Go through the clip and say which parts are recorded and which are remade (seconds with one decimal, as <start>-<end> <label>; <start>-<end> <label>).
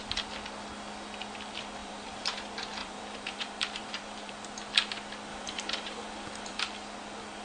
0.0-1.8 recorded; 1.8-2.4 remade; 2.4-2.8 recorded; 2.8-4.3 remade; 4.3-5.3 recorded; 5.3-6.6 remade; 6.6-7.4 recorded